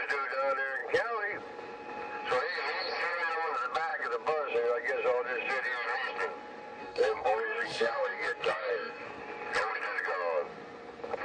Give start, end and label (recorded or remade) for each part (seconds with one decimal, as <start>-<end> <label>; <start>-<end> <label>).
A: 0.0-6.8 recorded; 6.8-9.2 remade; 9.2-11.2 recorded